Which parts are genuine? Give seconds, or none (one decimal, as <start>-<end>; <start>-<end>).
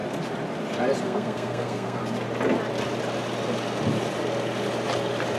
0.0-1.0; 2.0-5.4